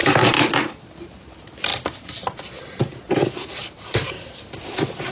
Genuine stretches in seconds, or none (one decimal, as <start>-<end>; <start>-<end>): 0.8-3.2; 4.6-5.1